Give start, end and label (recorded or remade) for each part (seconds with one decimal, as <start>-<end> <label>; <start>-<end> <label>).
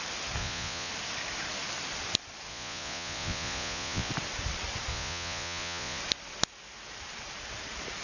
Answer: 0.0-0.4 recorded; 0.4-0.9 remade; 0.9-2.5 recorded; 2.5-4.1 remade; 4.1-4.9 recorded; 4.9-6.0 remade; 6.0-8.0 recorded